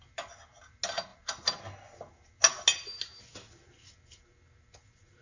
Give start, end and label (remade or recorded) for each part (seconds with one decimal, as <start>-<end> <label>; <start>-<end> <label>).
0.0-5.2 recorded